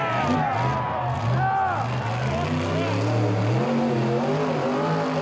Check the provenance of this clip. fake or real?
real